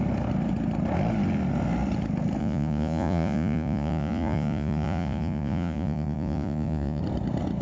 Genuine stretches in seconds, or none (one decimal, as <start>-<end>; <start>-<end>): 0.0-2.4; 7.0-7.6